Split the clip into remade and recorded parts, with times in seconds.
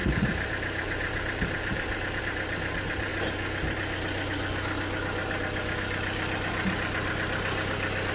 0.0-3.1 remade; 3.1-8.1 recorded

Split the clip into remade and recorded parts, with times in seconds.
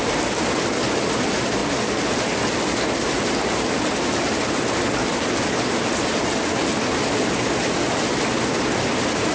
0.0-9.3 recorded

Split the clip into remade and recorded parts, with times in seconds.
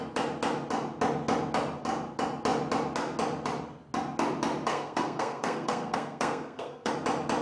0.0-4.7 recorded; 4.7-6.9 remade; 6.9-7.4 recorded